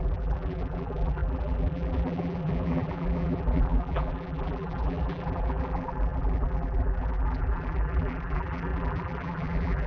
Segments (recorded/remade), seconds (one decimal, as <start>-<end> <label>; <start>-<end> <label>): 0.0-9.9 remade